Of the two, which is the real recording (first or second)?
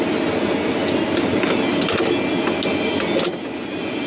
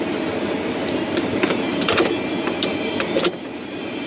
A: first